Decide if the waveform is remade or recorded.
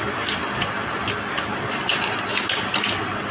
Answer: recorded